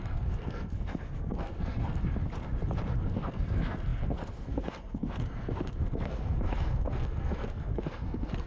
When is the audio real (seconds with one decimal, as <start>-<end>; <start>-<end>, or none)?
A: 2.0-3.0